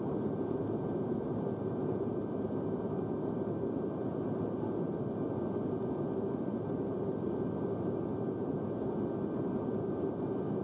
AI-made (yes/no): no